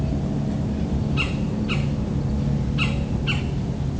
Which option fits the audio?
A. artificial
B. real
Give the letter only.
B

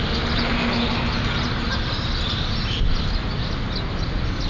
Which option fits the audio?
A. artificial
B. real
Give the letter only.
B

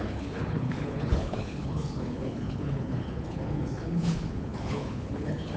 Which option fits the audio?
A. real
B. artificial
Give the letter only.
B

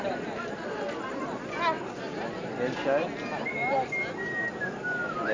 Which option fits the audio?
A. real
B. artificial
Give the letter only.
A